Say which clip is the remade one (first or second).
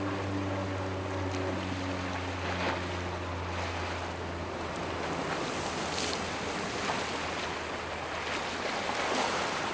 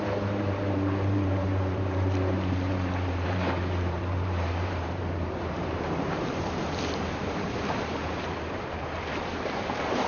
second